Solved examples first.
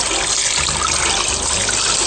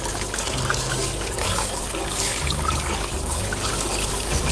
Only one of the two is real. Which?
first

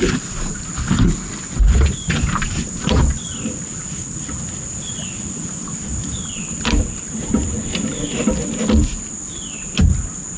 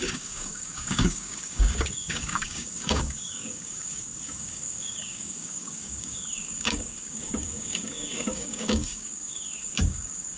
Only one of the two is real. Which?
first